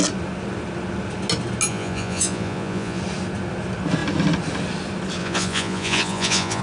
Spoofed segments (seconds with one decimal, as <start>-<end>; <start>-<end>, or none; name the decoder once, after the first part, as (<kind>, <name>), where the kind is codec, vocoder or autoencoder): 1.7-3.0 (vocoder, Vocos); 5.2-6.6